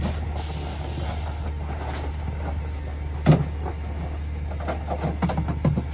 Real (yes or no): yes